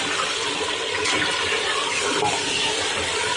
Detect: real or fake real